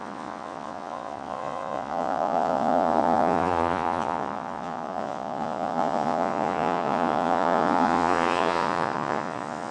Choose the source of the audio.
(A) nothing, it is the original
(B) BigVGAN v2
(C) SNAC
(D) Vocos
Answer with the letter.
D